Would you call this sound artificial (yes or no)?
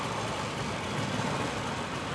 no